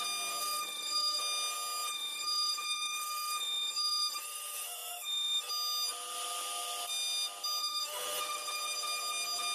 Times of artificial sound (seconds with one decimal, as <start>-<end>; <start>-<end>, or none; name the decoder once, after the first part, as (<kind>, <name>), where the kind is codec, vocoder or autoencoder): 0.4-1.2 (autoencoder, DAC-VAE); 1.9-5.5; 7.6-8.2